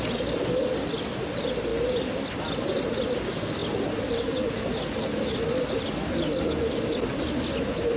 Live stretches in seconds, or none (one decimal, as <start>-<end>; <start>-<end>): 0.0-8.0